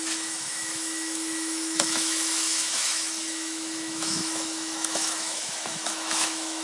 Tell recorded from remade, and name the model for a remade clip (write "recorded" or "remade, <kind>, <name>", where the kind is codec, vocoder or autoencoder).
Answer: remade, autoencoder, DAC-VAE